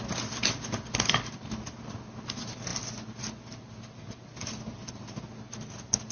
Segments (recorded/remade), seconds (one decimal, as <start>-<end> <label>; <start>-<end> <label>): 0.0-6.1 recorded